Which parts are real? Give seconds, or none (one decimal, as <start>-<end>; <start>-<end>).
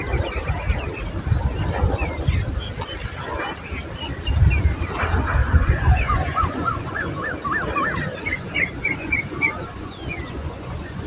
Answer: 0.0-5.4; 7.2-8.3